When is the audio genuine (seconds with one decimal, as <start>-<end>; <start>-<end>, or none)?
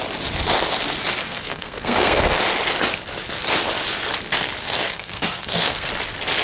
0.0-1.2; 2.4-4.6; 5.9-6.4